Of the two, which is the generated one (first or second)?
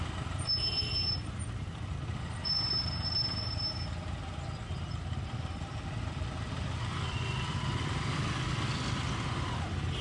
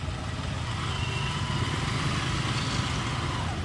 first